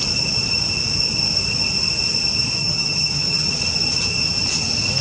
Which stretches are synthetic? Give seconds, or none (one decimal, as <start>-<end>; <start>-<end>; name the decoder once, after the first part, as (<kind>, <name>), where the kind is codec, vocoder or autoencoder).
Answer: 2.6-3.5 (vocoder, HiFi-GAN)